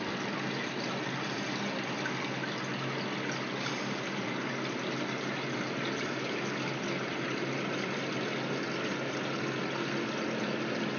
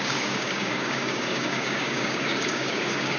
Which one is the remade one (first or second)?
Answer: second